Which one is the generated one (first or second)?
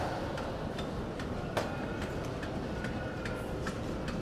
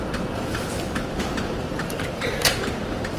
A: second